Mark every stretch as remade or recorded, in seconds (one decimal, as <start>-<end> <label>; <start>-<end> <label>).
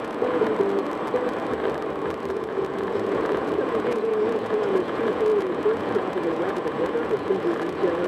0.0-0.5 remade; 0.5-2.3 recorded; 2.3-8.1 remade